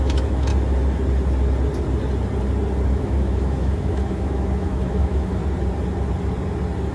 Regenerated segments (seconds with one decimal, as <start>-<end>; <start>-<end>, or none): 0.0-0.5; 2.9-5.4